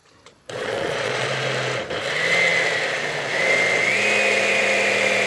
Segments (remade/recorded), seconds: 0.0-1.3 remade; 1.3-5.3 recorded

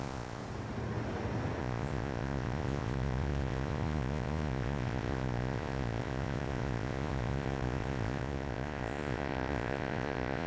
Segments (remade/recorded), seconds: 0.0-0.4 remade; 0.4-1.6 recorded; 1.6-10.5 remade

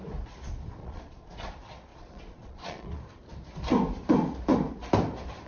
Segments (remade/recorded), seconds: 0.0-0.8 recorded; 0.8-1.5 remade; 1.5-1.9 recorded; 1.9-3.0 remade; 3.0-5.5 recorded

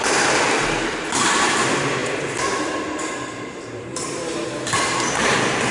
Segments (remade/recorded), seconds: 0.0-5.7 recorded